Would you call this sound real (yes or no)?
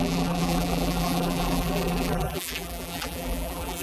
no